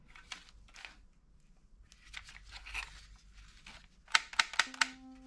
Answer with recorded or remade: recorded